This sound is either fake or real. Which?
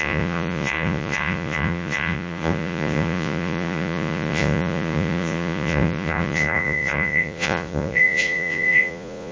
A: fake